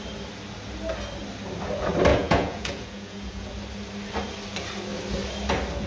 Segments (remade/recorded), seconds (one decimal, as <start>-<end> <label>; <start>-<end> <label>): 0.0-2.1 recorded; 2.1-3.5 remade; 3.5-5.9 recorded